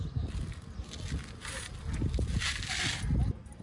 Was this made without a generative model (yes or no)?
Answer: yes